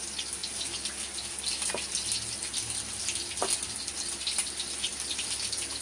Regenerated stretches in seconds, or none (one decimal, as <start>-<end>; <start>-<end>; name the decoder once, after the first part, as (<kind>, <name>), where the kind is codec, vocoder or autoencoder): none